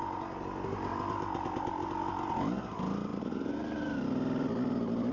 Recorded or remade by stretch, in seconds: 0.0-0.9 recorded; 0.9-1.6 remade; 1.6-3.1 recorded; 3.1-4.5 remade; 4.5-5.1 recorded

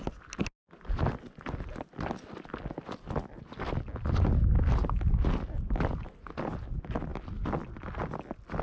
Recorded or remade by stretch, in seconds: 0.0-8.6 recorded

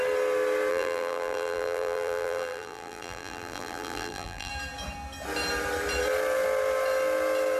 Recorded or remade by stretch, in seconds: 0.0-0.7 recorded; 0.7-4.5 remade; 4.5-7.6 recorded

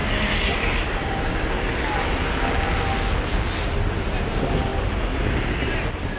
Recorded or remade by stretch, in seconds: 0.0-6.2 recorded

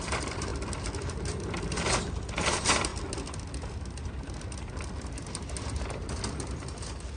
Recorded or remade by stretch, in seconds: 0.0-0.5 remade; 0.5-2.1 recorded; 2.1-2.9 remade; 2.9-7.2 recorded

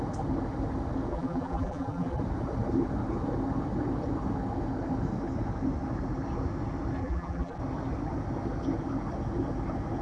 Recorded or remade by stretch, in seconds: 0.0-1.1 recorded; 1.1-2.2 remade; 2.2-7.0 recorded; 7.0-7.6 remade; 7.6-10.0 recorded

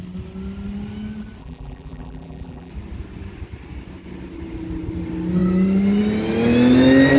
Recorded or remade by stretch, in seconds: 0.0-1.4 recorded; 1.4-2.7 remade; 2.7-7.2 recorded